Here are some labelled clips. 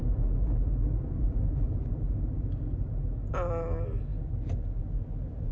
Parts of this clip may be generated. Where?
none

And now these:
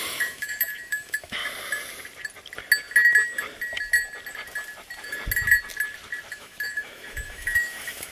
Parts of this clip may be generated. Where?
0.0-1.4 (autoencoder, DAC-VAE); 6.3-8.1

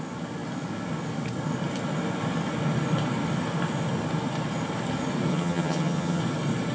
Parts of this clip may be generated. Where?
5.3-6.2 (vocoder, HiFi-GAN)

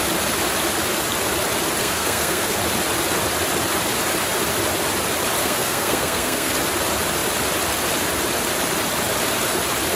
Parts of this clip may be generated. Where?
1.8-2.6 (codec, SNAC); 5.4-6.5